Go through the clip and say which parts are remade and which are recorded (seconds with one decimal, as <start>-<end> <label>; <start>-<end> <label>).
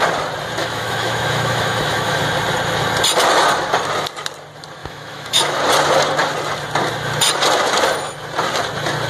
0.0-0.6 recorded; 0.6-2.2 remade; 2.2-4.8 recorded; 4.8-5.6 remade; 5.6-9.1 recorded